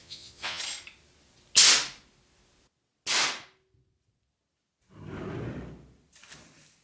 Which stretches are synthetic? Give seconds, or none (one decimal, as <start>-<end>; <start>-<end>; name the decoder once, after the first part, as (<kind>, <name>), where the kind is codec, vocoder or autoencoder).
0.0-0.6 (vocoder, Vocos)